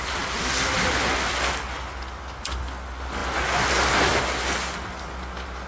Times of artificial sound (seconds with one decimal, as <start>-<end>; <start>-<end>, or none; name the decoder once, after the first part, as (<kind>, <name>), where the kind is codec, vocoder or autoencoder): none